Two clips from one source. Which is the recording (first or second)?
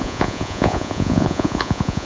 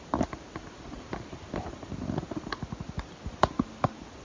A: second